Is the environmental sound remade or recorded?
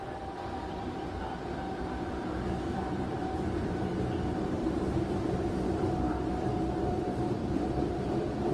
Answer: remade